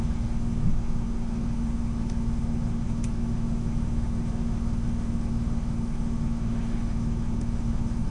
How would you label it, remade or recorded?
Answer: remade